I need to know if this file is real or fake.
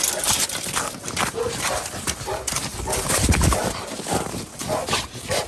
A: real